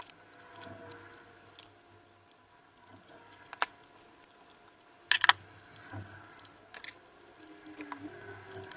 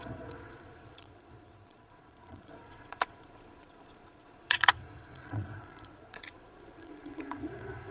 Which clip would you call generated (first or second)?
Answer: second